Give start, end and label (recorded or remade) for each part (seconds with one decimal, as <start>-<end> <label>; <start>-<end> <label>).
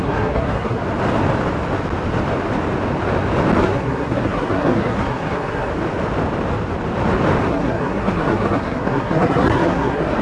0.0-0.8 remade; 0.8-3.6 recorded; 3.6-5.7 remade; 5.7-7.5 recorded; 7.5-10.2 remade